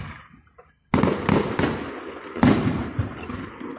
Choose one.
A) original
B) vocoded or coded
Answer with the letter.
A